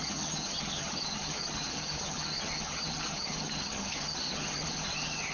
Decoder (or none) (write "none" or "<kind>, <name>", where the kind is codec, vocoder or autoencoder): vocoder, HiFi-GAN